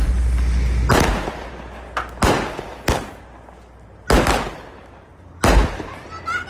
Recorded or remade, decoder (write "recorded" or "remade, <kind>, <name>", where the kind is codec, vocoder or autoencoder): recorded